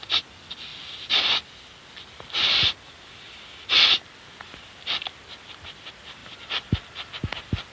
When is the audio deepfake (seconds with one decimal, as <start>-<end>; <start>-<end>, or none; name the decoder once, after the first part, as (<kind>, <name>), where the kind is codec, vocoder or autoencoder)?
none